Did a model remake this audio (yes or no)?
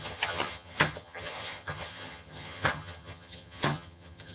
yes